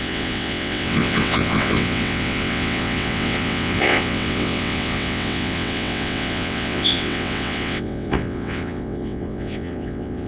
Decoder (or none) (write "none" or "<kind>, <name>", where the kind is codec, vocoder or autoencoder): vocoder, WaveNeXt